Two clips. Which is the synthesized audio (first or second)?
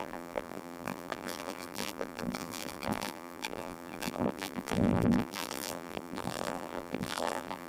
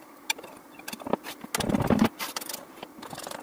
first